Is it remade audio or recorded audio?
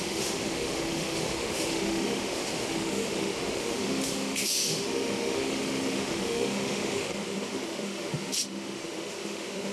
remade